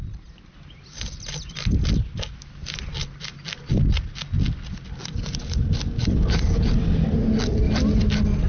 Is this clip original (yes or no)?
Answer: yes